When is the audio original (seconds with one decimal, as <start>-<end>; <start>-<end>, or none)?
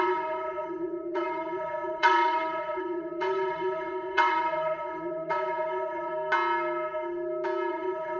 6.1-7.7